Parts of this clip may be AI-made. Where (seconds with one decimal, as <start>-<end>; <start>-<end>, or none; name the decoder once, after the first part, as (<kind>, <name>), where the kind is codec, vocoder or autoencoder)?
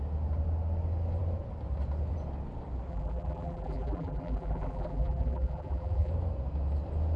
2.9-6.1 (vocoder, BigVGAN v2)